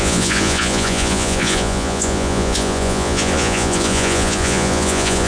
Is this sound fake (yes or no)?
yes